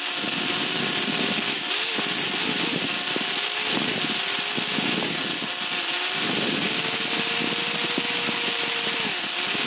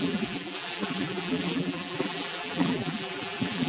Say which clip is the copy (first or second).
second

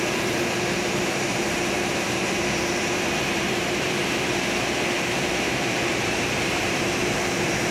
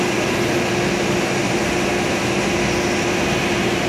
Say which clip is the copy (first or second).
first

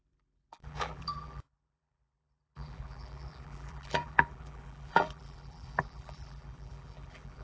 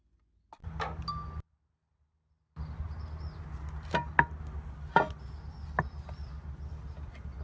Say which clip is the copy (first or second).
first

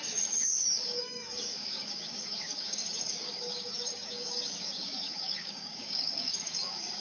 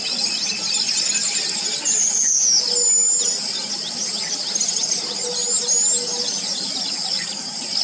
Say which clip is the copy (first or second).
first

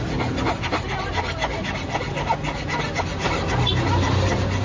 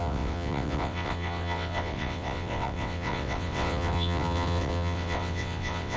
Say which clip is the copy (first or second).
second